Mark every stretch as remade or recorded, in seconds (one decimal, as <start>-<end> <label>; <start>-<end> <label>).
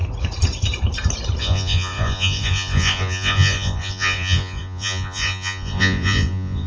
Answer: 0.0-1.4 recorded; 1.4-6.7 remade